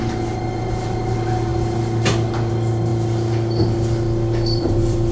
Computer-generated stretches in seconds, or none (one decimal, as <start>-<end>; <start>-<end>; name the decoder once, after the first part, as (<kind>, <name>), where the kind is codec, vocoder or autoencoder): 2.9-5.1 (vocoder, BigVGAN v2)